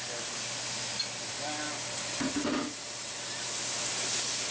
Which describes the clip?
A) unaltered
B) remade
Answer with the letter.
A